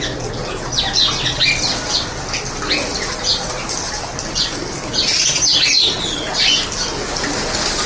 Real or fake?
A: real